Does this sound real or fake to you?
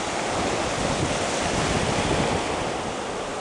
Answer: real